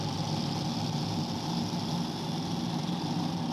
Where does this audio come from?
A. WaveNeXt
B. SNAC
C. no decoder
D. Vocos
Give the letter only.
C